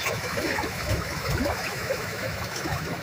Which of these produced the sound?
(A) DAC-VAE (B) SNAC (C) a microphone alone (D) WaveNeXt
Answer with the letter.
A